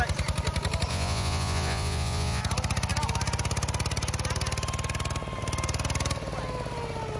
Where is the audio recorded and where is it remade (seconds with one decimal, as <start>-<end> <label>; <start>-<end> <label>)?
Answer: 0.0-0.9 recorded; 0.9-2.4 remade; 2.4-7.2 recorded